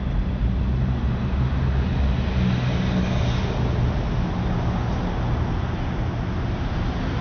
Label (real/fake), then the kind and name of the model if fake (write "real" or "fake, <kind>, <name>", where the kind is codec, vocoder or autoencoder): real